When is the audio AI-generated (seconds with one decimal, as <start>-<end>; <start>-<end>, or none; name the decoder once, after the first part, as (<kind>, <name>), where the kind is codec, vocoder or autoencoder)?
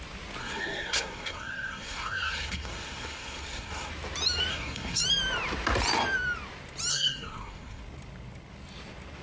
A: 0.4-3.9 (codec, SNAC); 4.5-5.0; 6.9-7.8